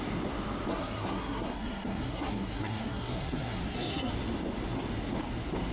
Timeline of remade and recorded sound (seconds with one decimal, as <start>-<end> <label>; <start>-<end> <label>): 0.0-0.7 recorded; 0.7-4.1 remade; 4.1-5.7 recorded